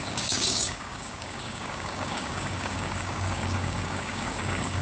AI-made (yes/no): yes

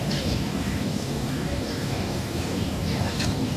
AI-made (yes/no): yes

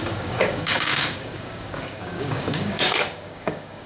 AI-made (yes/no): yes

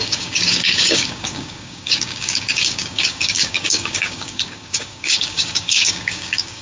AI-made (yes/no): yes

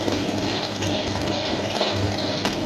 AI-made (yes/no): yes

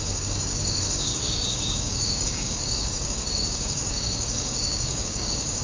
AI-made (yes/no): yes